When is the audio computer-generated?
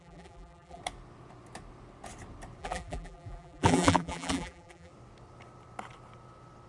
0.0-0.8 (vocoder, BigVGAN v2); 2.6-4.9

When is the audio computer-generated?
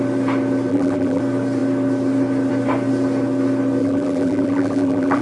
0.7-1.2 (vocoder, BigVGAN v2); 3.8-5.2